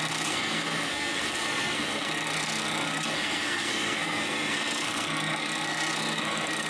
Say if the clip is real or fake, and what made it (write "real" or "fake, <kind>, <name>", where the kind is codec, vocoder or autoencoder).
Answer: fake, codec, SNAC